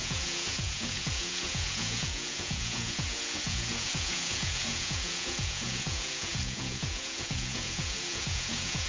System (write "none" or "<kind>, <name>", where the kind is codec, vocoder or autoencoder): vocoder, Vocos